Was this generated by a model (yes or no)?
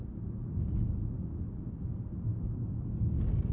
no